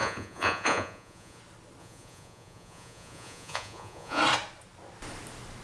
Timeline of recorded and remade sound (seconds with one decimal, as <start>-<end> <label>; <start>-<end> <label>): 0.0-1.4 remade; 1.4-1.8 recorded; 1.8-4.2 remade; 4.2-5.6 recorded